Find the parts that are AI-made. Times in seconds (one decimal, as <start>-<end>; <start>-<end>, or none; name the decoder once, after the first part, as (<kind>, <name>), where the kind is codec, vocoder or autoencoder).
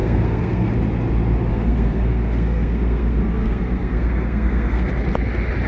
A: 0.0-0.7 (codec, SNAC); 1.5-4.9